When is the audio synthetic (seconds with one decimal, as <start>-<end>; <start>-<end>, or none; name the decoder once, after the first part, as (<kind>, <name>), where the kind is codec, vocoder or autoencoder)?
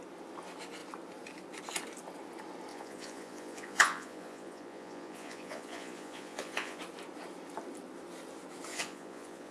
2.7-6.8 (vocoder, Vocos); 8.7-9.5